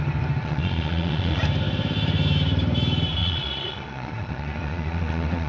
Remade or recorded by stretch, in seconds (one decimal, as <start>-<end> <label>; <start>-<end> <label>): 0.0-0.4 recorded; 0.4-1.4 remade; 1.4-3.2 recorded; 3.2-5.5 remade